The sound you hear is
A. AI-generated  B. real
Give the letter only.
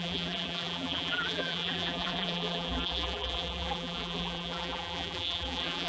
A